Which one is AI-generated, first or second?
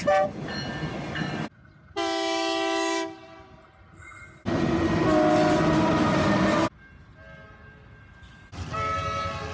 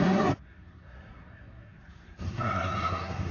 second